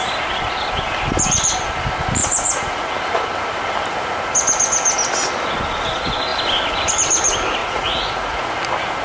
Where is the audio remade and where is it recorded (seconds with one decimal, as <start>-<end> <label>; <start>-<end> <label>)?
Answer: 0.0-2.2 recorded; 2.2-2.9 remade; 2.9-7.6 recorded; 7.6-8.5 remade; 8.5-9.0 recorded